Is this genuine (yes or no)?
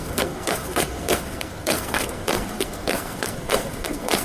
no